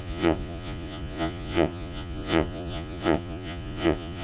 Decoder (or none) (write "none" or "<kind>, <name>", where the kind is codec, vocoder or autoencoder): vocoder, Vocos